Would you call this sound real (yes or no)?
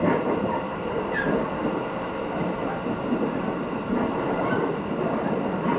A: yes